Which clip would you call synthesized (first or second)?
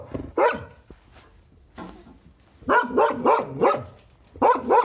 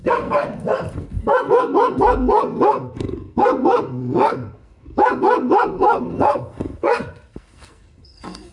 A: second